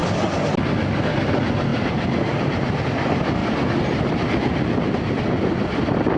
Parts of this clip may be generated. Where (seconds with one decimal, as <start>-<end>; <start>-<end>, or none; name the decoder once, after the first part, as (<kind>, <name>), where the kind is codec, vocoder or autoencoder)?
none